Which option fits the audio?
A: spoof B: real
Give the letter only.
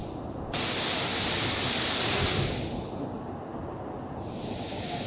B